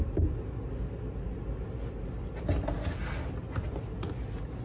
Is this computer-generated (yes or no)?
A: no